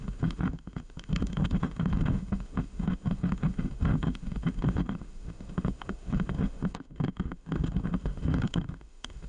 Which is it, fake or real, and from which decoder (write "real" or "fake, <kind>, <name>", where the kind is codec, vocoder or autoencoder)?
fake, autoencoder, DAC-VAE